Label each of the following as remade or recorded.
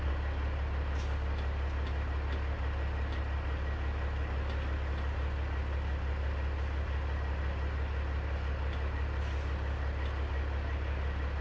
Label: recorded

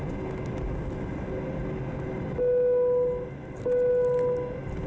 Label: recorded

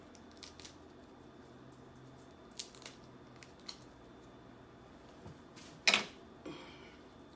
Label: recorded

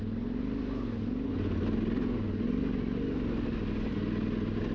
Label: recorded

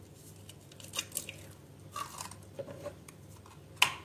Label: recorded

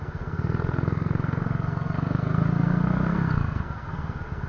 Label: remade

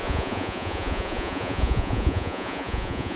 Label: remade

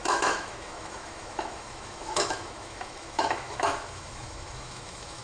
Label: remade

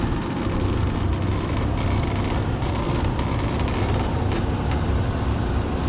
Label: recorded